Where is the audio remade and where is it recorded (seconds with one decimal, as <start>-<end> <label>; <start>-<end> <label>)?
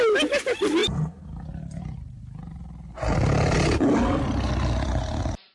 0.0-5.5 recorded